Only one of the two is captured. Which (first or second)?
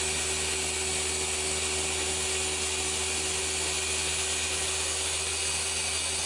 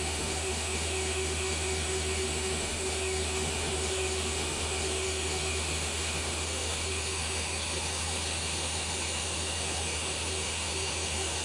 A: first